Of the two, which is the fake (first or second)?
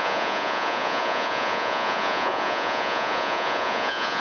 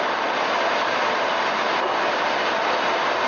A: first